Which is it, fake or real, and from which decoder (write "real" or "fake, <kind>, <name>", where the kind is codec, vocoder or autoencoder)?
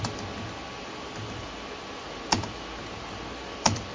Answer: real